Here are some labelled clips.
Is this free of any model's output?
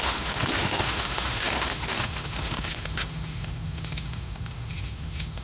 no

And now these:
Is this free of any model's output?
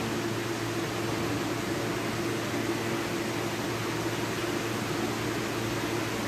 yes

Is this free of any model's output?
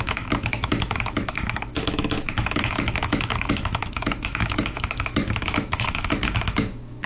no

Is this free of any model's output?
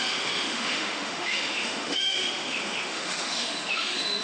no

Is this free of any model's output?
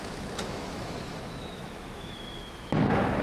no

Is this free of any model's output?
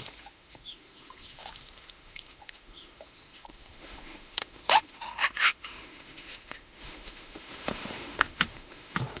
no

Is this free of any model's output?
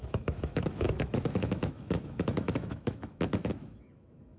no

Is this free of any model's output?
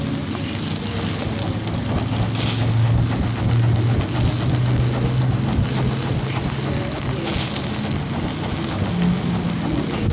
yes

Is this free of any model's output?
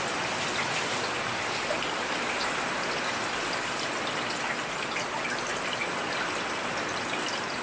yes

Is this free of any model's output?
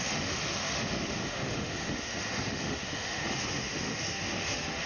no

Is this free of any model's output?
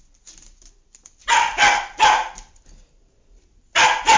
yes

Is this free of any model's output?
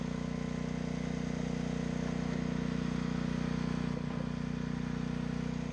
yes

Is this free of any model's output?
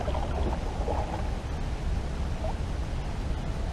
yes